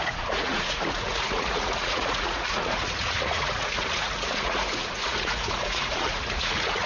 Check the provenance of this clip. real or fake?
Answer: fake